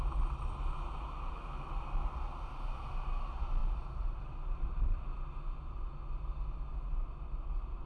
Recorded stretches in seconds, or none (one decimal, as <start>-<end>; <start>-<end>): 0.0-3.6; 4.2-7.9